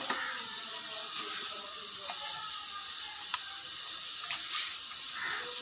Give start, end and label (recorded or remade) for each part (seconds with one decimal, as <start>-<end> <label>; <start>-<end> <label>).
0.0-5.6 recorded